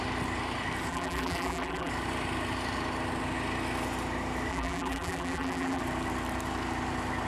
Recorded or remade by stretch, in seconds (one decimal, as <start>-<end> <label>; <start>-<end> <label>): 0.0-0.9 recorded; 0.9-1.9 remade; 1.9-4.5 recorded; 4.5-5.8 remade; 5.8-7.3 recorded